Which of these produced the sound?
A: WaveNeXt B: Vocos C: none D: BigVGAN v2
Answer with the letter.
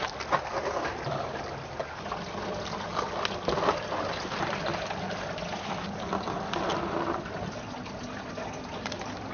C